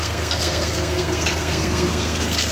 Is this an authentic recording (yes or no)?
no